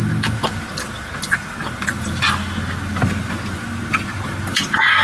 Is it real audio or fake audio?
real